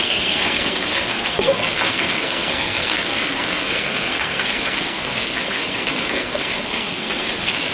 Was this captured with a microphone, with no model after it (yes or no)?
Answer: no